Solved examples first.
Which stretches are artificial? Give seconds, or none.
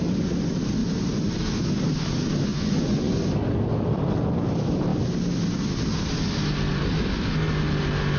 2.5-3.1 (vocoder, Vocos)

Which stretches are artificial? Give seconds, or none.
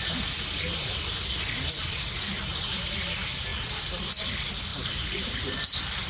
4.7-5.5 (vocoder, BigVGAN v2)